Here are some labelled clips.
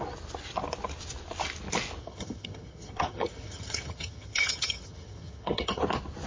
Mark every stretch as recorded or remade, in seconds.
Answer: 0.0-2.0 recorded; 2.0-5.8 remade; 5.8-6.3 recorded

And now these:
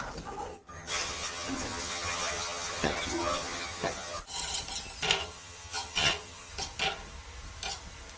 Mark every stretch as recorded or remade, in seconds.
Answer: 0.0-0.5 recorded; 0.5-4.2 remade; 4.2-5.2 recorded; 5.2-6.5 remade; 6.5-8.2 recorded